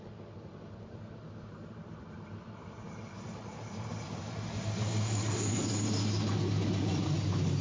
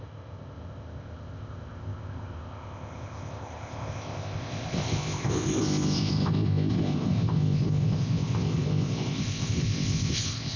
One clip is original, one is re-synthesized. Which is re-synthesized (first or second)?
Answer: second